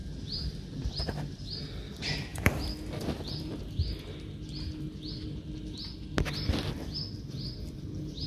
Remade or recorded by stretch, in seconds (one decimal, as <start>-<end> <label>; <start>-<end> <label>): 0.0-1.0 remade; 1.0-2.3 recorded; 2.3-3.6 remade; 3.6-8.3 recorded